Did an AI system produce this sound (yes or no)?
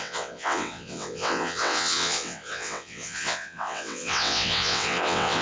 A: yes